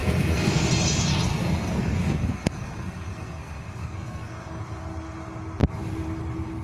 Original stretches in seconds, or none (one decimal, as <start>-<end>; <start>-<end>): 0.6-1.3; 4.6-6.6